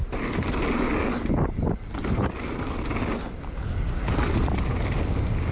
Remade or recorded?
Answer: recorded